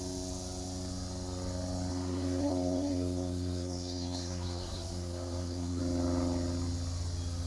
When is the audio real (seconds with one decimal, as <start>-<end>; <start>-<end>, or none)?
0.0-1.9; 5.8-7.5